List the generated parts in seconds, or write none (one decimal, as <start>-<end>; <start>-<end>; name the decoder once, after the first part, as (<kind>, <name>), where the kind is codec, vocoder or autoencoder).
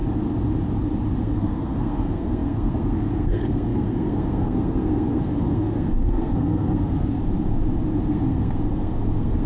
1.2-7.2 (codec, SNAC); 8.1-9.5